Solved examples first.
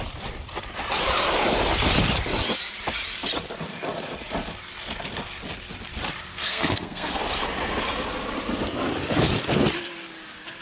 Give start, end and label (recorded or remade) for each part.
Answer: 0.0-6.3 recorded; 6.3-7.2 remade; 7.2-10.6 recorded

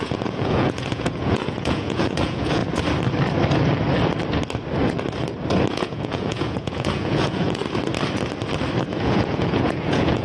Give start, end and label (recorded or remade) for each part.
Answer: 0.0-2.6 remade; 2.6-5.7 recorded; 5.7-7.6 remade; 7.6-8.9 recorded; 8.9-10.2 remade

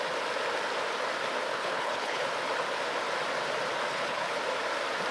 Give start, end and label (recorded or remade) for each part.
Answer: 0.0-1.5 recorded; 1.5-2.3 remade; 2.3-3.9 recorded; 3.9-4.4 remade; 4.4-5.1 recorded

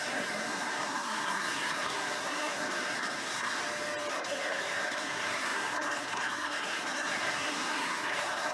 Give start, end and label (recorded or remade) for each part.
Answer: 0.0-3.6 remade; 3.6-4.1 recorded; 4.1-8.5 remade

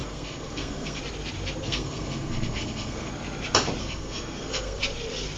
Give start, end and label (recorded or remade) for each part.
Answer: 0.0-1.0 remade; 1.0-1.6 recorded; 1.6-3.1 remade; 3.1-3.8 recorded; 3.8-4.8 remade; 4.8-5.4 recorded

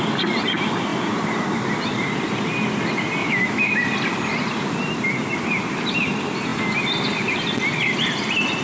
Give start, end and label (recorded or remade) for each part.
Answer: 0.0-3.2 recorded; 3.2-3.7 remade; 3.7-8.6 recorded

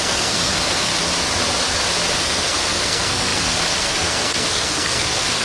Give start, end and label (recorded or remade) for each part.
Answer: 0.0-0.9 remade; 0.9-2.2 recorded; 2.2-5.4 remade

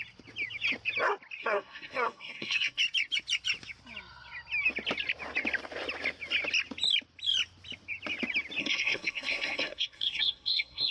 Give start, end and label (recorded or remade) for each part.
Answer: 0.0-1.4 recorded; 1.4-2.8 remade; 2.8-8.6 recorded; 8.6-10.9 remade